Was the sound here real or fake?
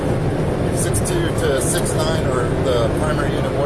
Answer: real